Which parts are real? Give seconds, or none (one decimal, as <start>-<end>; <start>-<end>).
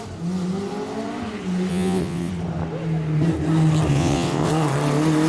0.0-1.7; 2.3-3.9; 4.5-5.3